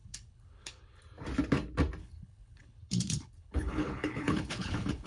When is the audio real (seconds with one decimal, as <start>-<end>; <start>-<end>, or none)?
1.0-2.0